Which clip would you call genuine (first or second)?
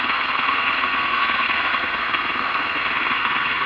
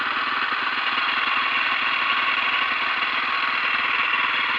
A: second